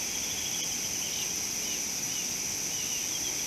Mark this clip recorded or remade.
recorded